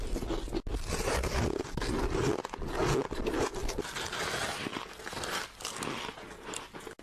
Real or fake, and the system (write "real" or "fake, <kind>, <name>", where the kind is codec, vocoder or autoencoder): real